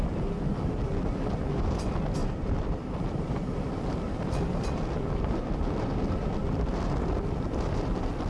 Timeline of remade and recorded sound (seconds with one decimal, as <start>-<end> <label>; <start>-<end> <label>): 0.0-2.2 recorded; 2.2-4.7 remade; 4.7-8.3 recorded